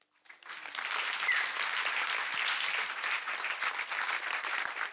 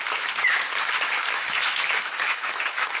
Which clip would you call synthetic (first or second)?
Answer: second